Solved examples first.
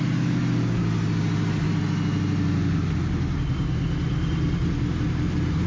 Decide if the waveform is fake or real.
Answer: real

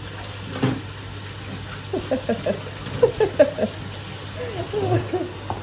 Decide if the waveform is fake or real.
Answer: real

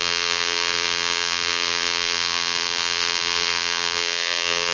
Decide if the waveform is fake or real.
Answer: fake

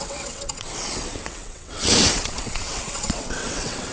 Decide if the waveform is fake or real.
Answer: fake